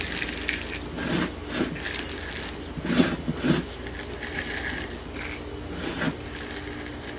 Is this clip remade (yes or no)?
no